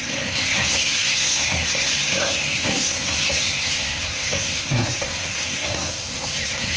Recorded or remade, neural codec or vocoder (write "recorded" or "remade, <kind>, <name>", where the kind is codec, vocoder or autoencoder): remade, codec, SNAC